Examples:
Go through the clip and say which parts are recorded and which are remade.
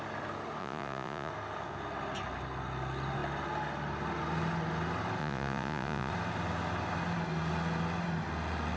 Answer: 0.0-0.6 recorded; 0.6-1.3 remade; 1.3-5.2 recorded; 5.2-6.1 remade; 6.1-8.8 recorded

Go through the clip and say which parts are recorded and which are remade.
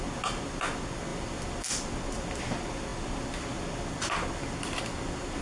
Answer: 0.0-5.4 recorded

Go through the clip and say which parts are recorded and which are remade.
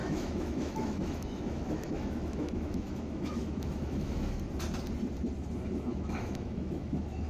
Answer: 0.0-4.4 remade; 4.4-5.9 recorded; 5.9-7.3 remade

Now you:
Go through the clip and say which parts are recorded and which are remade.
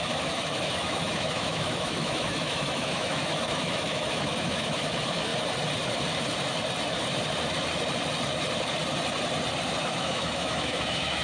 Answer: 0.0-5.3 remade; 5.3-9.8 recorded; 9.8-11.2 remade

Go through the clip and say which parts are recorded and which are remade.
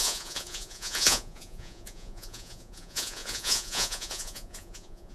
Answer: 0.0-5.1 remade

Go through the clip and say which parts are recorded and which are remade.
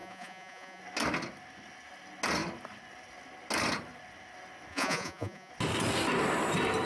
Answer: 0.0-0.8 remade; 0.8-4.7 recorded; 4.7-5.5 remade; 5.5-6.9 recorded